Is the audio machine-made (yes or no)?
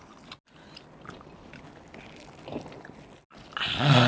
no